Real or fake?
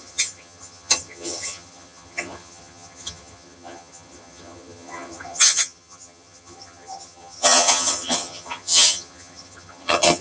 fake